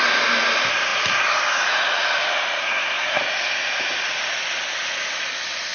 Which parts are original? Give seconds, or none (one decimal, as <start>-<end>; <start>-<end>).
0.0-2.6; 3.2-5.7